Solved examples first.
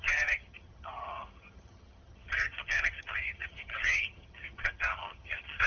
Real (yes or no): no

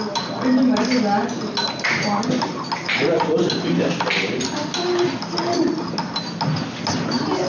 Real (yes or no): yes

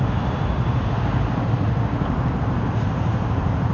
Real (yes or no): yes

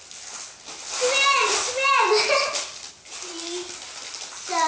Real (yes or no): yes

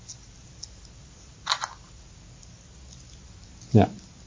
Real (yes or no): yes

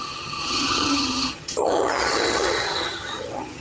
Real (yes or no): no